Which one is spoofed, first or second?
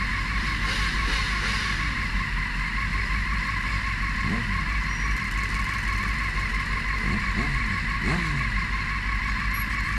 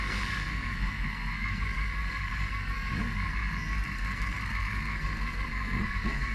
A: second